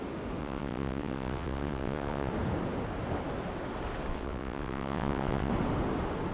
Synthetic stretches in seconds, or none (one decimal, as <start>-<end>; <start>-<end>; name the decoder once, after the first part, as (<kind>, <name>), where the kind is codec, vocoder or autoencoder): 0.4-2.3 (vocoder, WaveNeXt); 4.1-5.5